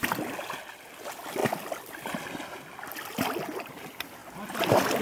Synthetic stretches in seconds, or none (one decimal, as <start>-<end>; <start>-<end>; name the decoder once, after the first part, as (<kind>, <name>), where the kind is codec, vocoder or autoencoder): none